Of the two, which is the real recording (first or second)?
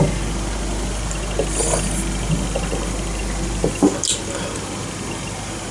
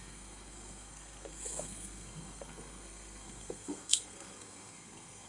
first